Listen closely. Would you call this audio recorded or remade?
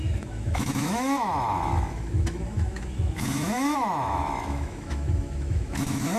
remade